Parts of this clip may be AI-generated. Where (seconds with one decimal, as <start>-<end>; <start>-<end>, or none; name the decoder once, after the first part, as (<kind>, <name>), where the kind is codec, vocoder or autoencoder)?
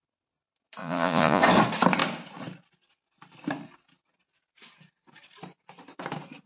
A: 0.8-1.4 (vocoder, Vocos)